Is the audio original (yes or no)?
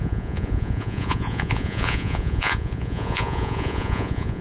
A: no